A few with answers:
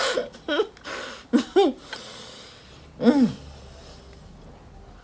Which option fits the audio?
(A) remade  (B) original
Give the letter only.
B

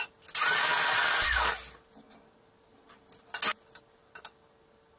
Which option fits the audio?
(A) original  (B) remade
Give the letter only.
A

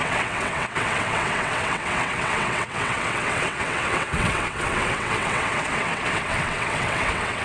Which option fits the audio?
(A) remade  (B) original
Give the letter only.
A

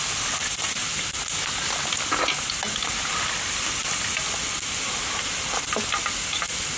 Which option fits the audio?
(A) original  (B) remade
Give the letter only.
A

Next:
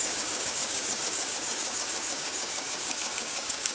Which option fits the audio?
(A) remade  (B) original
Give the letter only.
A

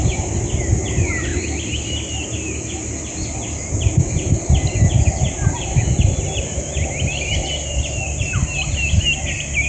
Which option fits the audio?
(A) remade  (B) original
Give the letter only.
B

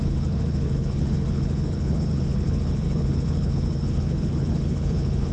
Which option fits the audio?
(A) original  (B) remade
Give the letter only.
B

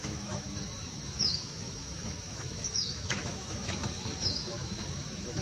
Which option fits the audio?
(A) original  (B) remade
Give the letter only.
B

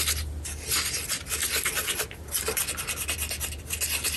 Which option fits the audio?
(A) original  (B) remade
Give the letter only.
A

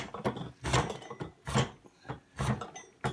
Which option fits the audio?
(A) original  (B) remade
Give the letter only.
A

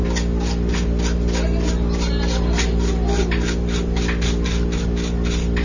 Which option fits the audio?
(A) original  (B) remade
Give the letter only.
A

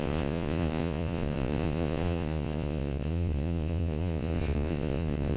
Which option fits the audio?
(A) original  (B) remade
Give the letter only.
B